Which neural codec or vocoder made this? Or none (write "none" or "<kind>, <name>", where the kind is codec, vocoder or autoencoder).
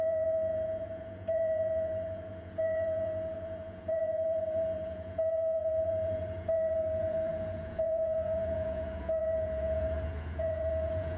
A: vocoder, Vocos